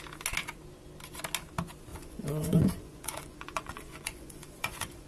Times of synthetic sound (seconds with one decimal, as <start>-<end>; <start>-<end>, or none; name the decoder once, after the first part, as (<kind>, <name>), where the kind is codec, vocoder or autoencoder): 1.9-5.1 (vocoder, Vocos)